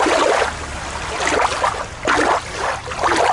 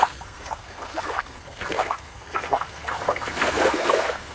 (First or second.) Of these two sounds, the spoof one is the second